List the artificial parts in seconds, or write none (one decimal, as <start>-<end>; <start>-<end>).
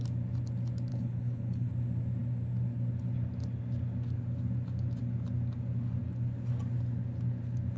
0.9-1.7